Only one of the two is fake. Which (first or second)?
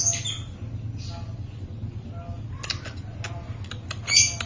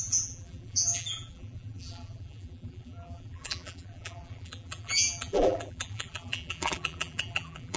second